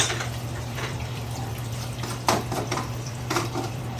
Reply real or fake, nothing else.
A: fake